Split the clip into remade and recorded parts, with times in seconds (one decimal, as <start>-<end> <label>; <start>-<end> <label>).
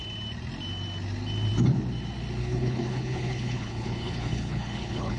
0.0-2.4 recorded; 2.4-5.2 remade